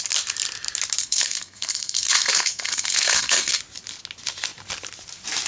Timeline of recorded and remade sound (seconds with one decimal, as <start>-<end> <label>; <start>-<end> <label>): 0.0-1.0 recorded; 1.0-3.6 remade; 3.6-5.5 recorded

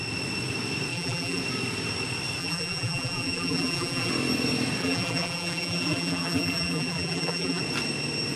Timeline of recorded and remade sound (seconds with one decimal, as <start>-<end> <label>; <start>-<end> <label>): 0.0-0.9 recorded; 0.9-1.4 remade; 1.4-2.4 recorded; 2.4-4.1 remade; 4.1-4.8 recorded; 4.8-7.6 remade; 7.6-8.4 recorded

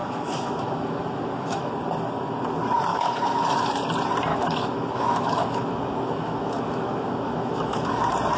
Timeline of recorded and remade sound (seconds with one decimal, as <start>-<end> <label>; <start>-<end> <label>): 0.0-1.7 remade; 1.7-2.9 recorded; 2.9-3.7 remade; 3.7-4.3 recorded; 4.3-7.9 remade; 7.9-8.4 recorded

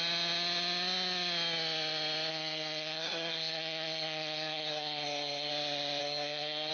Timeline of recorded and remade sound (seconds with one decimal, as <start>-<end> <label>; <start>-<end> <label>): 0.0-2.3 recorded; 2.3-5.5 remade; 5.5-6.0 recorded; 6.0-6.7 remade

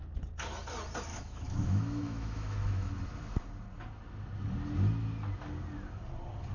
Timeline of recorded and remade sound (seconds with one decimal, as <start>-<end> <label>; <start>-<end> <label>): 0.0-1.1 recorded; 1.1-2.9 remade; 2.9-6.5 recorded

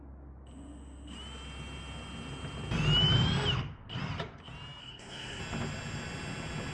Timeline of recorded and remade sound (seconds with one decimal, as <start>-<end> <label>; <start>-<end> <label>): 0.0-4.8 recorded; 4.8-5.4 remade; 5.4-6.7 recorded

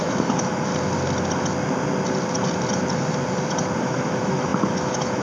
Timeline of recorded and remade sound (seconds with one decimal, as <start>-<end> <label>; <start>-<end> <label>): 0.0-0.7 remade; 0.7-3.8 recorded; 3.8-5.2 remade

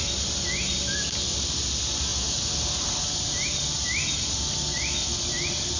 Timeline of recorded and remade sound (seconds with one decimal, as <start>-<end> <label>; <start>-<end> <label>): 0.0-5.8 recorded